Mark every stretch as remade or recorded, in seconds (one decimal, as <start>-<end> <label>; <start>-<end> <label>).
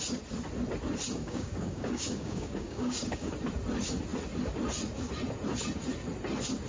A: 0.0-1.2 recorded; 1.2-3.3 remade; 3.3-6.7 recorded